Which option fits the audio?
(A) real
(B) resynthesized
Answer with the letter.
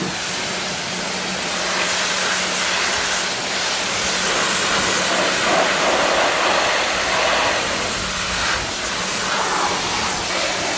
A